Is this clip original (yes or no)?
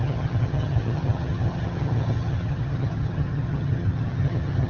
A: no